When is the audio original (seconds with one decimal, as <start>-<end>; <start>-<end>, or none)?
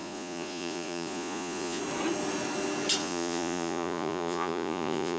1.8-3.0